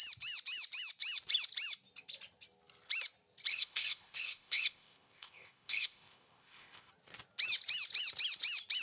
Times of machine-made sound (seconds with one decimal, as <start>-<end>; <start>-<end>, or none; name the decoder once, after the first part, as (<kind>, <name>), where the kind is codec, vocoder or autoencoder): 3.5-6.9 (codec, ZipCodec)